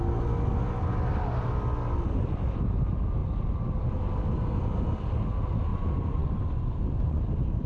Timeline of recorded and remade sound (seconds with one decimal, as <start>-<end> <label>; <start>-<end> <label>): 0.0-5.7 recorded; 5.7-7.2 remade; 7.2-7.7 recorded